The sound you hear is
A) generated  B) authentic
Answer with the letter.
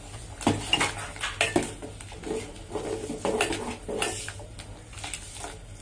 B